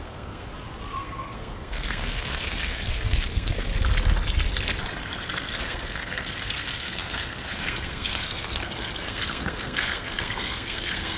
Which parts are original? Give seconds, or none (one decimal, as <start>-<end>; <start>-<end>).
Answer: 0.5-1.0; 3.7-5.3